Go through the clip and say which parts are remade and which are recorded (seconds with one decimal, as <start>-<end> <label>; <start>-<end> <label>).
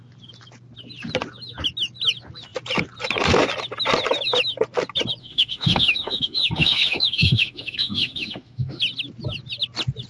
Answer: 0.0-5.2 recorded; 5.2-8.8 remade; 8.8-10.1 recorded